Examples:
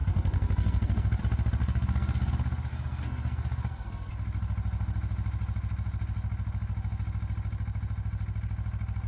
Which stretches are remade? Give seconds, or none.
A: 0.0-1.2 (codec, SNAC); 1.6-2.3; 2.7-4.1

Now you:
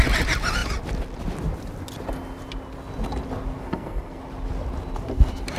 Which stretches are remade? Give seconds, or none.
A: 3.6-4.2 (codec, SNAC)

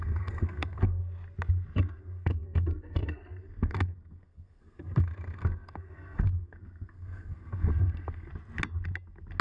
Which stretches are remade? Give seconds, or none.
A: 0.0-1.0 (codec, SNAC); 2.0-8.3

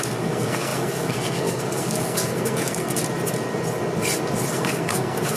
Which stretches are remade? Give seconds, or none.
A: 0.0-3.0 (codec, SNAC); 4.5-5.4

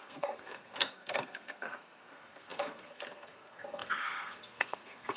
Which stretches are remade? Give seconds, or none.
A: 0.0-5.2 (codec, SNAC)

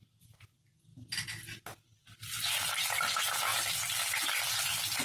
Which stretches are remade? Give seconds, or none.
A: none

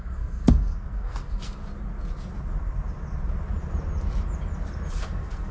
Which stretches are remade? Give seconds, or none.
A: 0.0-1.6 (codec, SNAC); 4.9-5.5